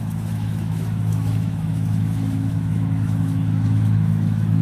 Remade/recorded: remade